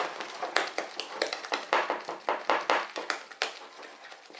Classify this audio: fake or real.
real